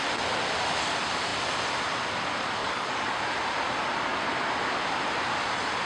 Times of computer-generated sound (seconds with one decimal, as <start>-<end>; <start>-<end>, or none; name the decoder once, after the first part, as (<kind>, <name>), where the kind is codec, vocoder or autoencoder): 2.6-3.1 (codec, DAC)

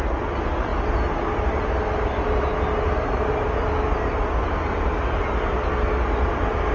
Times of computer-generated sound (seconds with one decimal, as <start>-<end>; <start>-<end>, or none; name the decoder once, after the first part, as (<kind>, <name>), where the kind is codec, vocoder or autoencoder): none

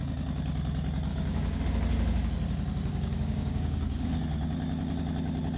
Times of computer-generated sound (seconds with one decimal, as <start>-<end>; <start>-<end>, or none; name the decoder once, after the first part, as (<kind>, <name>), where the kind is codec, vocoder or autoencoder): 1.1-1.6 (codec, DAC); 2.9-4.2

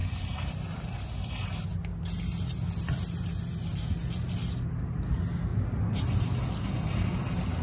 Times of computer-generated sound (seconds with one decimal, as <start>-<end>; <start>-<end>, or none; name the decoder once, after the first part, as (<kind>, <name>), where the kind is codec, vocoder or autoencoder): none